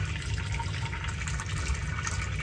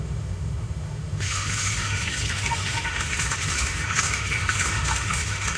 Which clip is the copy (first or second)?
second